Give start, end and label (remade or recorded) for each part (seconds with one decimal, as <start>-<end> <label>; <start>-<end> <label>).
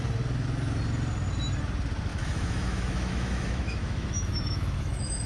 0.0-2.1 recorded; 2.1-5.3 remade